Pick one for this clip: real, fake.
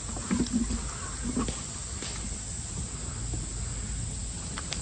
real